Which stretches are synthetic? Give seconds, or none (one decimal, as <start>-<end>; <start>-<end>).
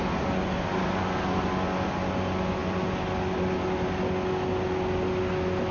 none